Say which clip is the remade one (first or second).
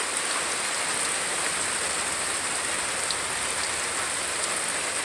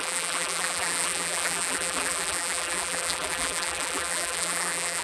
second